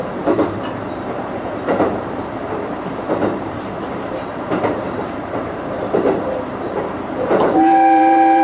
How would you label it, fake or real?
fake